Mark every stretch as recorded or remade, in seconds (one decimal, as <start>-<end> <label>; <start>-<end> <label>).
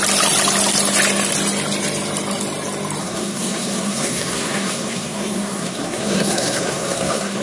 0.0-3.0 recorded; 3.0-7.4 remade